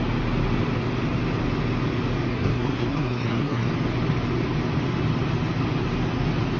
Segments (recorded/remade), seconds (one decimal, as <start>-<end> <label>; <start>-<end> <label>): 0.0-2.3 recorded; 2.3-3.7 remade; 3.7-6.6 recorded

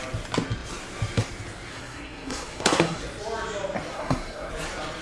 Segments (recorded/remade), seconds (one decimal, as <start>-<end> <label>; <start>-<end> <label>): 0.0-1.7 recorded; 1.7-3.0 remade; 3.0-3.9 recorded; 3.9-4.5 remade; 4.5-5.0 recorded